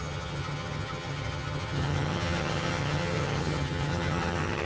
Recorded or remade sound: remade